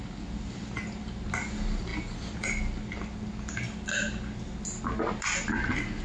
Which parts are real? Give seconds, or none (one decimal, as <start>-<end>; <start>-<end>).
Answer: 0.0-6.0